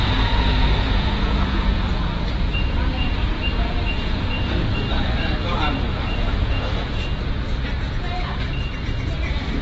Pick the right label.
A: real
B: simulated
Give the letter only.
B